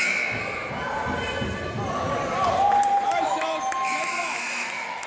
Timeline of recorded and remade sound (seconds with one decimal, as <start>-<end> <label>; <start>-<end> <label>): 0.0-3.1 recorded; 3.1-5.1 remade